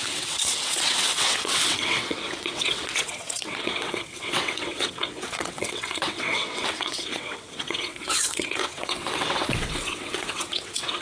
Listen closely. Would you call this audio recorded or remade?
remade